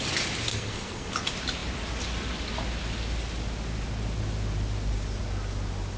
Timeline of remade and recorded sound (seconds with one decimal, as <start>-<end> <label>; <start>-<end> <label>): 0.0-0.5 recorded; 0.5-1.1 remade; 1.1-6.0 recorded